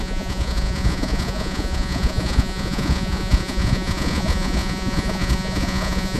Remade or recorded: remade